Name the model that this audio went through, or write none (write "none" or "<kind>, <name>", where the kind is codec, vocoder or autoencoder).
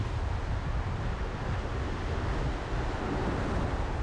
none